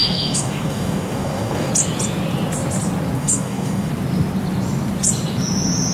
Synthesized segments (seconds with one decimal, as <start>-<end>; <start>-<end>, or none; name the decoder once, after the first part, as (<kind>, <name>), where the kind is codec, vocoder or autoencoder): 0.0-1.7 (codec, DAC); 3.2-3.9